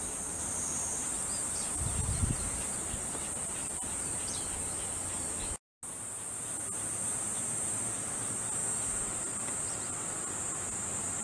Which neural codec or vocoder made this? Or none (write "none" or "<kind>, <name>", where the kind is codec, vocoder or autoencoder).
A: none